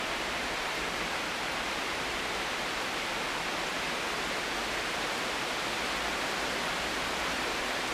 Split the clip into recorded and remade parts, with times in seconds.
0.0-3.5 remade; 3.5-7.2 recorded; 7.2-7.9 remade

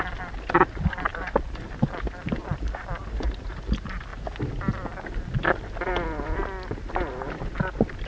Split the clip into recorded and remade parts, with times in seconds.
0.0-1.1 recorded; 1.1-1.7 remade; 1.7-8.1 recorded

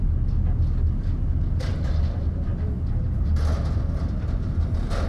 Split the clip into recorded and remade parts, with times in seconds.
0.0-5.1 recorded

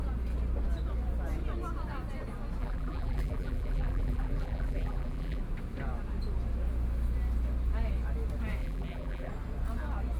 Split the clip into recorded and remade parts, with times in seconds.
0.0-2.6 recorded; 2.6-5.4 remade; 5.4-8.6 recorded; 8.6-9.3 remade; 9.3-10.2 recorded

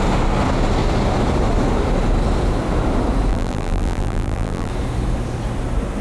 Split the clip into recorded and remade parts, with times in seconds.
0.0-3.3 recorded; 3.3-4.7 remade; 4.7-6.0 recorded